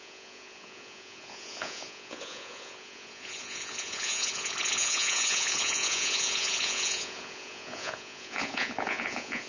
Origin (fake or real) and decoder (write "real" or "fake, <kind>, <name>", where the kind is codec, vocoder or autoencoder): fake, vocoder, Vocos